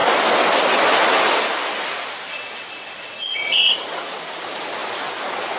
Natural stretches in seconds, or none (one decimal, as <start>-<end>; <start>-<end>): 0.0-2.3; 3.7-5.6